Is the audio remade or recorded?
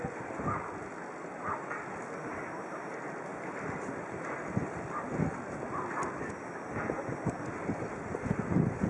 recorded